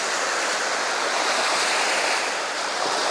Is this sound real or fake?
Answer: fake